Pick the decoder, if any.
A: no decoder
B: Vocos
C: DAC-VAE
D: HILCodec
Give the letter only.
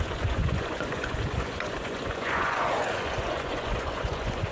B